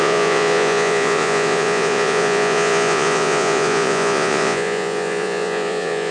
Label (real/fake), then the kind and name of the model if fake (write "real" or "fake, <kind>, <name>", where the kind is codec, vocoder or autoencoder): fake, vocoder, Vocos